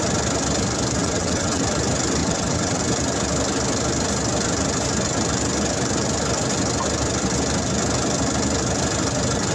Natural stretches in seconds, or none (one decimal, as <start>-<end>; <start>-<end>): 0.0-1.0; 1.6-2.2; 2.8-9.5